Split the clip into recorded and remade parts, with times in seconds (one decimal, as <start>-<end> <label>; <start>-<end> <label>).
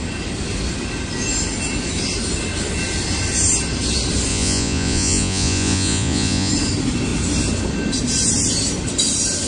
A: 0.0-4.3 recorded; 4.3-6.5 remade; 6.5-9.5 recorded